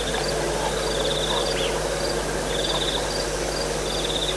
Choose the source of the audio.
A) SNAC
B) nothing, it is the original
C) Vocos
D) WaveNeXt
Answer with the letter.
B